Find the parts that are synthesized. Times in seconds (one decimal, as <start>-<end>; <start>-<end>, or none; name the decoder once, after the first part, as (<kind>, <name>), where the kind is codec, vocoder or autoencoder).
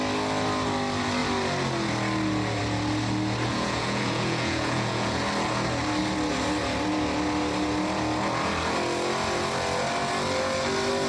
3.5-5.2 (vocoder, Vocos)